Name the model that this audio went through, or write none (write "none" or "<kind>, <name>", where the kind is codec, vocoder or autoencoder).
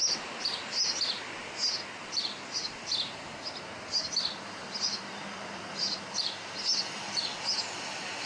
none